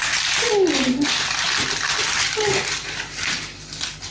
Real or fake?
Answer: real